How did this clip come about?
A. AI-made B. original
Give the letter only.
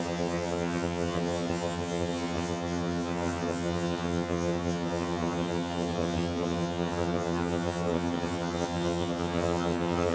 A